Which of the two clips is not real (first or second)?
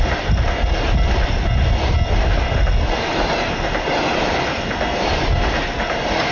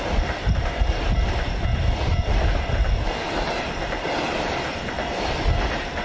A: second